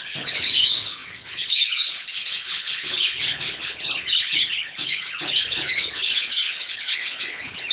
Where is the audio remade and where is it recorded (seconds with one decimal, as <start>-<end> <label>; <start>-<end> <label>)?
0.0-7.7 remade